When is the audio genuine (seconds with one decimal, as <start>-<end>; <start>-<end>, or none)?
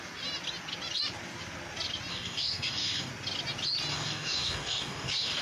0.0-2.1; 3.1-3.9